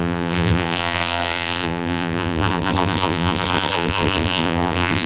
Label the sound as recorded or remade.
remade